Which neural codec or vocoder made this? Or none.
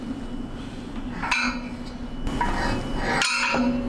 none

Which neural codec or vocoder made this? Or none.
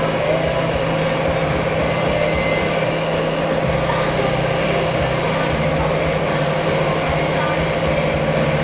none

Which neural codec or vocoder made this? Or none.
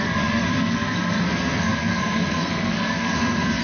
codec, SNAC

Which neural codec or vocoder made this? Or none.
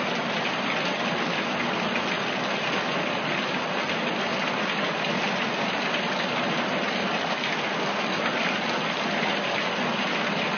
none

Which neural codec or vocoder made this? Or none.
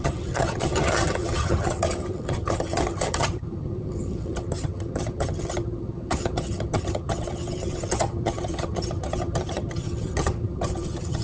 vocoder, HiFi-GAN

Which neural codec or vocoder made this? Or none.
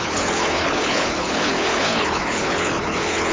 codec, HILCodec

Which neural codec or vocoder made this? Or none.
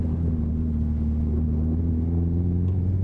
none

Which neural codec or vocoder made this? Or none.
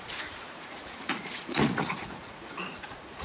vocoder, Vocos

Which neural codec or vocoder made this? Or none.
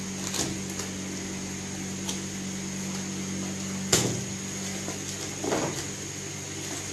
none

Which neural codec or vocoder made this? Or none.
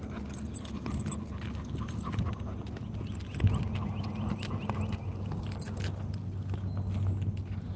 none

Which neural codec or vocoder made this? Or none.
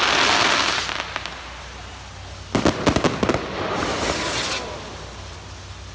none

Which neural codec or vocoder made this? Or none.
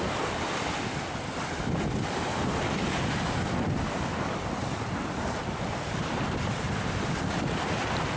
none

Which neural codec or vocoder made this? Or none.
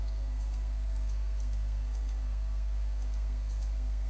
codec, SNAC